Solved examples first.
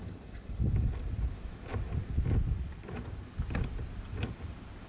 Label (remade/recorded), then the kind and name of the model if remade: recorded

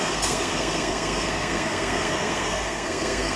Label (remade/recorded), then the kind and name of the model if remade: remade, codec, SNAC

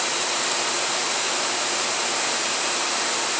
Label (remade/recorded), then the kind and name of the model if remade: remade, vocoder, BigVGAN v2